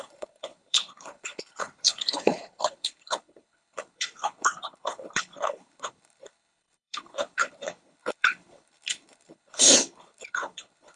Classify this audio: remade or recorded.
remade